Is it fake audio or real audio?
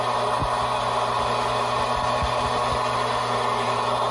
real